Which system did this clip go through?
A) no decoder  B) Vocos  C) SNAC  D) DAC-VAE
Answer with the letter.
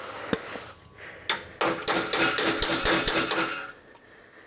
A